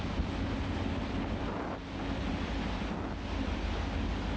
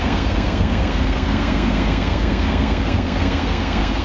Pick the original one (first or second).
first